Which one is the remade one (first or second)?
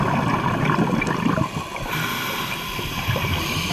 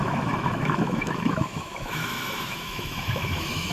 second